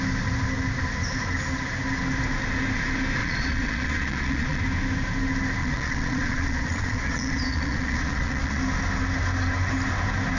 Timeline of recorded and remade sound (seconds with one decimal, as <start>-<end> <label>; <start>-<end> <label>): 0.0-3.2 recorded; 3.2-4.6 remade; 4.6-5.6 recorded; 5.6-8.6 remade; 8.6-10.4 recorded